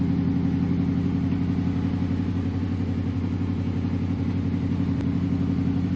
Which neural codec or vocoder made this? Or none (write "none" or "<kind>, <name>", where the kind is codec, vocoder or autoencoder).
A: none